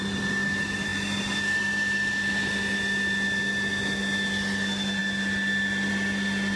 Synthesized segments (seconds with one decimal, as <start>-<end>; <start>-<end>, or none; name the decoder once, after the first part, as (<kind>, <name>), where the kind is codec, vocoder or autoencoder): none

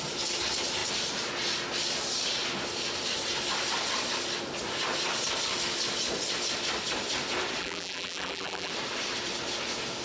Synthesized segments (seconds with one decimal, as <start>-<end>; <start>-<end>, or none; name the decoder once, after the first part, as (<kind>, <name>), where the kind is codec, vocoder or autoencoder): 7.6-8.7 (vocoder, BigVGAN v2)

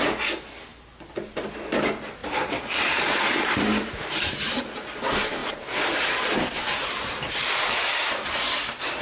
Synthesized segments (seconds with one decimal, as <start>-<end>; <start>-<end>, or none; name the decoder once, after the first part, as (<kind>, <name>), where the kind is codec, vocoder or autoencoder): 2.2-4.6 (vocoder, BigVGAN v2); 5.4-8.1